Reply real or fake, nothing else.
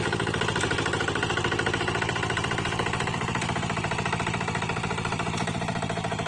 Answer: real